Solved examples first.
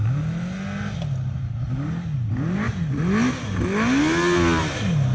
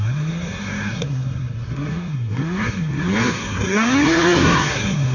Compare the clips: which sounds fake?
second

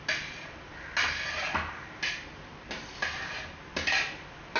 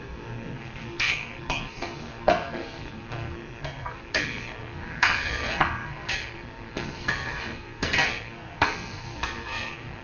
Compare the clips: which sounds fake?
second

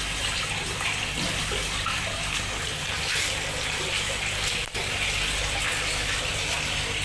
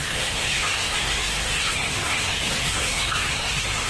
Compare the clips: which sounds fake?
second